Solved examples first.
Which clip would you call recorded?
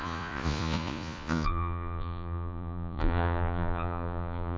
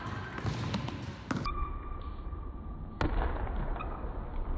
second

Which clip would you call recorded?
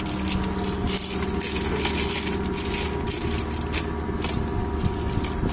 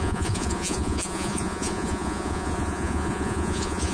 first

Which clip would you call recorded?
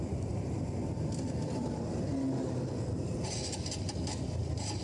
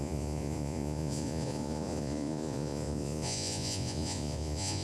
first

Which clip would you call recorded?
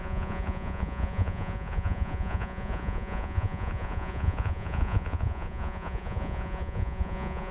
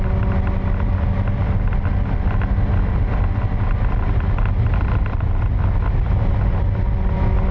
second